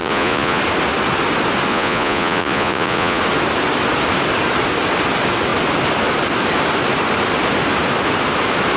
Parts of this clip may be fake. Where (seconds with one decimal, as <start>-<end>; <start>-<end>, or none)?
0.0-0.6; 1.7-3.2